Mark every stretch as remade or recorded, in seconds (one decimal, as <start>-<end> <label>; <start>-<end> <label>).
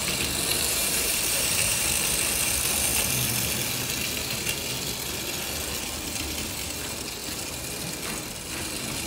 0.0-0.5 recorded; 0.5-1.8 remade; 1.8-9.1 recorded